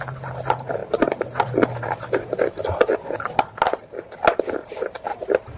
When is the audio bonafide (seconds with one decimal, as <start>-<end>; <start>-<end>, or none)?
0.0-0.8; 1.5-5.6